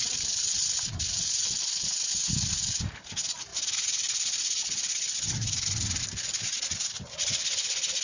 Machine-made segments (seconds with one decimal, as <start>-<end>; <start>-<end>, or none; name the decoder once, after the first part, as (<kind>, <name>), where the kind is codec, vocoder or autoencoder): none